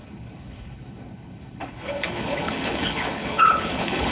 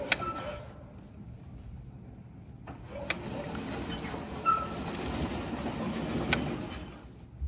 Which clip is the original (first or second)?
second